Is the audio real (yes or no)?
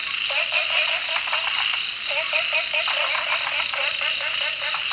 yes